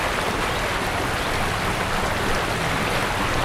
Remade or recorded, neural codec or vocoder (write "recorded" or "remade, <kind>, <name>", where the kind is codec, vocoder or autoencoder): recorded